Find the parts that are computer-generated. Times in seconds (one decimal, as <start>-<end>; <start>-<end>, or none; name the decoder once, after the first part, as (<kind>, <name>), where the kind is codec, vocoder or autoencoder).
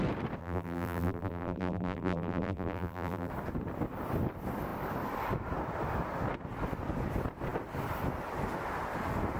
0.4-3.3 (vocoder, BigVGAN v2)